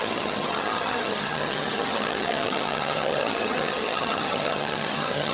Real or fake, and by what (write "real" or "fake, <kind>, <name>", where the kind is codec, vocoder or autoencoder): fake, vocoder, HiFi-GAN